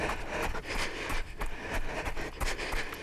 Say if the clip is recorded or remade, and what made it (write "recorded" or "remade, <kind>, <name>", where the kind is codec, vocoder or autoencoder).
recorded